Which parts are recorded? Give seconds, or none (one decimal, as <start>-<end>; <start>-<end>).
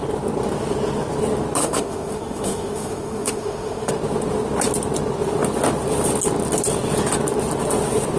0.0-1.6; 3.9-8.2